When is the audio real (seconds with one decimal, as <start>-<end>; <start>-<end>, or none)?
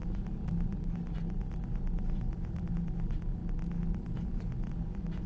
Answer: 0.0-5.3